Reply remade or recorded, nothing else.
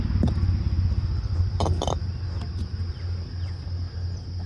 recorded